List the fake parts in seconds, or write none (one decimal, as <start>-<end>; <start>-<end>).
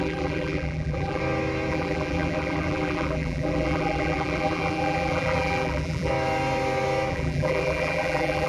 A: 0.0-1.2; 1.7-6.1; 7.1-8.5